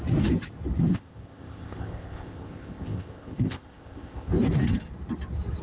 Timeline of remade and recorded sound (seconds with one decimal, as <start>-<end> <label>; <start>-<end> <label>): 0.0-0.9 recorded; 0.9-4.3 remade; 4.3-5.6 recorded